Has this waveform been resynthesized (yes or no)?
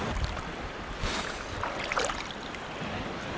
no